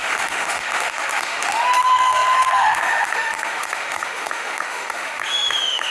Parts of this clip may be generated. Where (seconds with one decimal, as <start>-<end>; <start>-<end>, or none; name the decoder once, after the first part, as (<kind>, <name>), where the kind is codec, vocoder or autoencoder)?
0.0-5.9 (autoencoder, DAC-VAE)